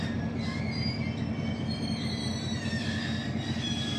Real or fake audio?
real